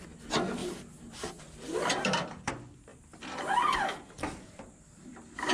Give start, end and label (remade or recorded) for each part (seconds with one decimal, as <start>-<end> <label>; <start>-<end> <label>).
0.0-0.6 recorded; 0.6-2.5 remade; 2.5-5.5 recorded